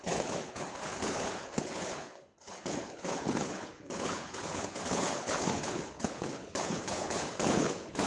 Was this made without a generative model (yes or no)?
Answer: no